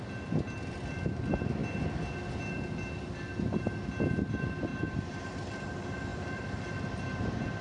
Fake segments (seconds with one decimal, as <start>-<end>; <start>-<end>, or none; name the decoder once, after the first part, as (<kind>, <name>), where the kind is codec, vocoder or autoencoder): 4.7-5.5 (vocoder, BigVGAN v2); 6.1-7.6